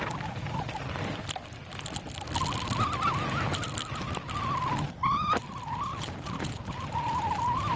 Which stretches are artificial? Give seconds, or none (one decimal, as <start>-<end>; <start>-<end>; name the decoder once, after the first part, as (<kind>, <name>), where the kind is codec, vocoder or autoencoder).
none

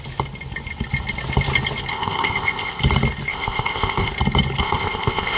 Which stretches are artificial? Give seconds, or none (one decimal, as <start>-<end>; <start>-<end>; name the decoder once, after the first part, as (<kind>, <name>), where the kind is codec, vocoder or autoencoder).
1.9-2.8 (codec, ZipCodec); 3.3-4.1; 4.6-5.4

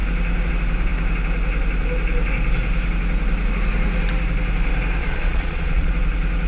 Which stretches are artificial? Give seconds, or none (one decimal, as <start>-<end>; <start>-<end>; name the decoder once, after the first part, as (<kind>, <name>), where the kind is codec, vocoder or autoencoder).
5.0-5.9 (vocoder, Vocos)

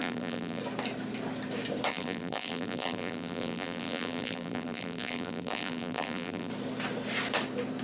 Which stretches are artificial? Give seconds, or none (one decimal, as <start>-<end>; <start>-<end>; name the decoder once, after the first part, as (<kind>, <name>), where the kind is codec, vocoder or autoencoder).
0.0-0.6 (vocoder, BigVGAN v2); 1.9-6.5

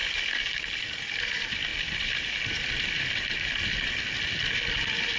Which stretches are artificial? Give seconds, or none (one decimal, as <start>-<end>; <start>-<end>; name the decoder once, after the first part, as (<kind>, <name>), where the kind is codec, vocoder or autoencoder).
none

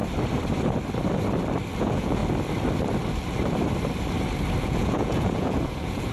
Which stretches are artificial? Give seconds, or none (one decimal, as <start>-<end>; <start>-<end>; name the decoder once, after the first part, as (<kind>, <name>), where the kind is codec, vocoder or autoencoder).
1.8-2.2 (vocoder, Vocos); 4.6-6.1

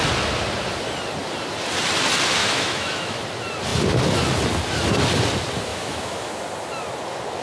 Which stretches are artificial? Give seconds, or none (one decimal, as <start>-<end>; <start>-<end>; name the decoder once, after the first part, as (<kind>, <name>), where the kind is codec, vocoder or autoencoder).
2.4-3.2 (autoencoder, DAC-VAE); 5.7-6.3

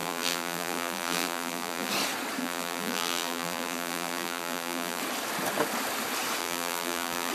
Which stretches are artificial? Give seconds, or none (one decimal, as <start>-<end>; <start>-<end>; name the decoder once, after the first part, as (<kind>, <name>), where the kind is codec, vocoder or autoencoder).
0.0-1.9 (vocoder, BigVGAN v2); 2.4-5.0; 6.4-7.3